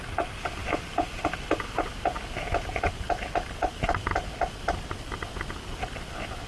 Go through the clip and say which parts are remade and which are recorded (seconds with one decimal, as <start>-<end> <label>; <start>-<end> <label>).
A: 0.0-6.5 recorded